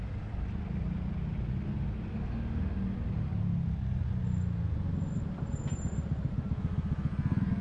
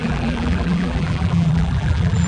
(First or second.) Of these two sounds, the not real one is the second